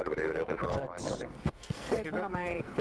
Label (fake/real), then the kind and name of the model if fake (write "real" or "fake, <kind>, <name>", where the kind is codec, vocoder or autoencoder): fake, codec, SNAC